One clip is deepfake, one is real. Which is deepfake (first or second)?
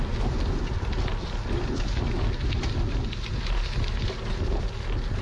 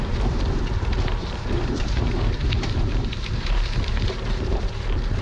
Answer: second